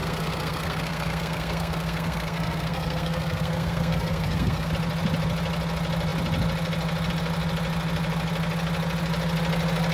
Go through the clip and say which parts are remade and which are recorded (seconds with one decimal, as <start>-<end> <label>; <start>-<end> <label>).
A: 0.0-4.7 remade; 4.7-9.9 recorded

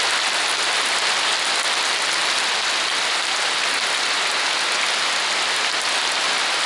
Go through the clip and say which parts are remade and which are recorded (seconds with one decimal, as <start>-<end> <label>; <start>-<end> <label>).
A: 0.0-6.7 recorded